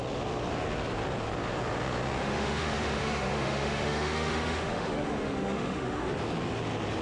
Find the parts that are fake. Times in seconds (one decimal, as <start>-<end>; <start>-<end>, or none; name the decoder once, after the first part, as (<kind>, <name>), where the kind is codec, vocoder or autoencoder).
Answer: 2.2-6.1 (autoencoder, DAC-VAE)